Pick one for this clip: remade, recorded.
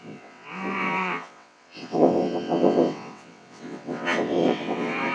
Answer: remade